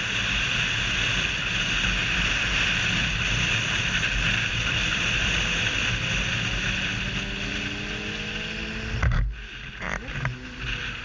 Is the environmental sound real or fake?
real